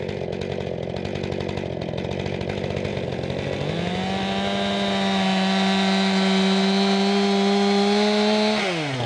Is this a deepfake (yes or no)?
no